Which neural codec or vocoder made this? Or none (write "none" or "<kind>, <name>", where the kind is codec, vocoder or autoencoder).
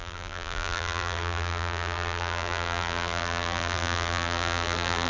vocoder, BigVGAN v2